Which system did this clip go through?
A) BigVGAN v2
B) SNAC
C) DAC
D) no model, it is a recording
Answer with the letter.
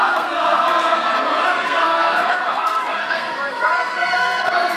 B